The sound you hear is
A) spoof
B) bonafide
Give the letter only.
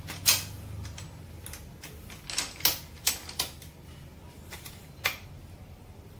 B